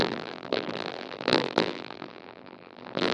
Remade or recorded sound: remade